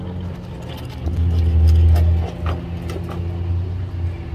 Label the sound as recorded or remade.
recorded